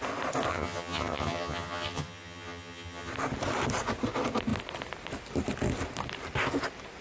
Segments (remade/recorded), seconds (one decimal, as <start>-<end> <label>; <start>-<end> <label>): 0.0-0.5 recorded; 0.5-3.1 remade; 3.1-7.0 recorded